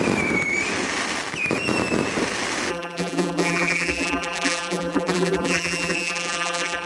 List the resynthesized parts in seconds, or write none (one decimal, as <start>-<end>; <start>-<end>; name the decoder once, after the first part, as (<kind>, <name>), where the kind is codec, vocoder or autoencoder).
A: 2.7-6.9 (vocoder, BigVGAN v2)